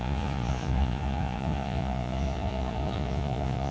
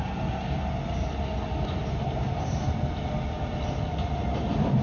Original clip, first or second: second